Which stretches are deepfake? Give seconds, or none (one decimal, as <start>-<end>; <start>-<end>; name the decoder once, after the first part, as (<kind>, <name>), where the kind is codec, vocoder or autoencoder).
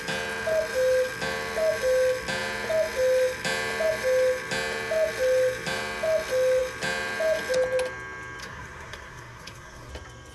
8.4-9.9 (codec, SNAC)